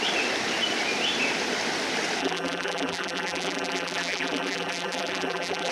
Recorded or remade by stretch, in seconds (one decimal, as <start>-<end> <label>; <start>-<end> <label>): 0.0-2.2 recorded; 2.2-5.7 remade